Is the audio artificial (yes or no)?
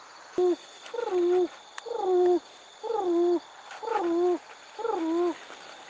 no